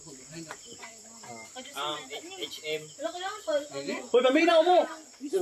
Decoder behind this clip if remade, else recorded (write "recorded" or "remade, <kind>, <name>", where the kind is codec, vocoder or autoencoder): remade, vocoder, BigVGAN v2